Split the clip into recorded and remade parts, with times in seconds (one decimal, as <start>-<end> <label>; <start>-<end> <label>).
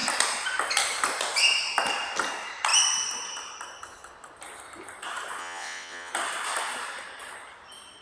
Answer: 0.0-5.4 recorded; 5.4-6.1 remade; 6.1-8.0 recorded